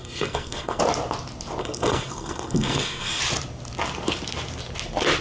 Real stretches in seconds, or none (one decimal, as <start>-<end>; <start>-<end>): 0.8-1.6; 3.2-5.2